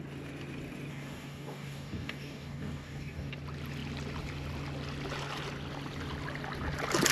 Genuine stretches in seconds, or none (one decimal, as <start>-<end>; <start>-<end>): 0.0-0.9; 3.3-7.1